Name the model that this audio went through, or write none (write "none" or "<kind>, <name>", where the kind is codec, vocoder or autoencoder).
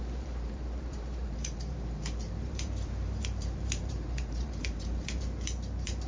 vocoder, BigVGAN v2